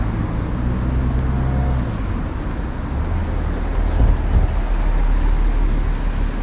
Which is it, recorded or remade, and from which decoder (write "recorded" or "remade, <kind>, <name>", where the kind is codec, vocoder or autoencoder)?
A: recorded